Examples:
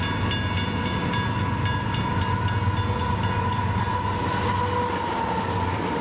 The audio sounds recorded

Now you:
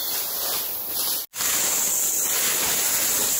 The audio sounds recorded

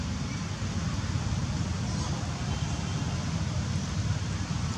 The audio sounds recorded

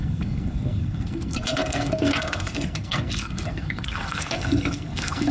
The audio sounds remade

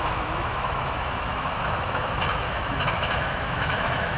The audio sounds remade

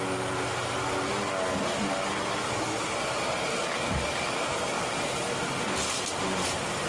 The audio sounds recorded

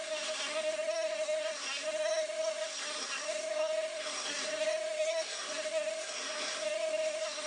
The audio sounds remade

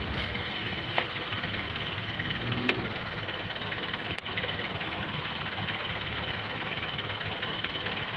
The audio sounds remade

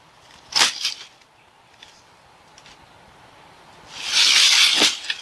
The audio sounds recorded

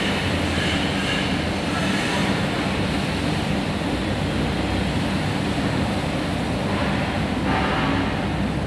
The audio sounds recorded